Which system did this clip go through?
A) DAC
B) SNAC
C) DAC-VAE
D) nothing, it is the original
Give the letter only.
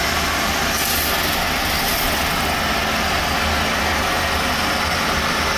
D